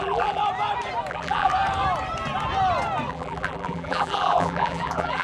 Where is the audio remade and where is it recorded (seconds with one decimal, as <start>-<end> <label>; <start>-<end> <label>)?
0.0-0.4 remade; 0.4-1.1 recorded; 1.1-1.5 remade; 1.5-3.1 recorded; 3.1-5.2 remade